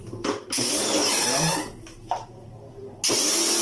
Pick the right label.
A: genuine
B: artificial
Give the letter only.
A